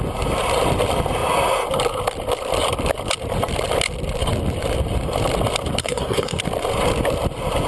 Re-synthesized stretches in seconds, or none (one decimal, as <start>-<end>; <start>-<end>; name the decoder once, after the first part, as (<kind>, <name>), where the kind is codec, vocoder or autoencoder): 5.8-6.4 (codec, SNAC)